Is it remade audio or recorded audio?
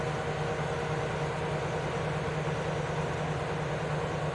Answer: recorded